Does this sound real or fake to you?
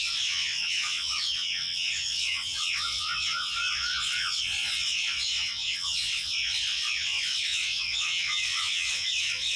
fake